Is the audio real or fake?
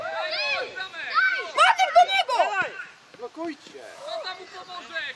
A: real